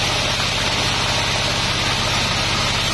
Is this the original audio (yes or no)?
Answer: yes